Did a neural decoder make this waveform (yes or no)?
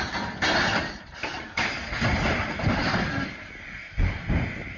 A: no